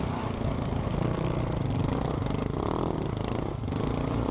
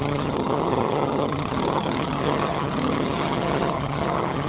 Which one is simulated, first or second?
second